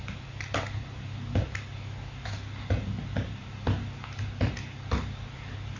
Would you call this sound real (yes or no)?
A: yes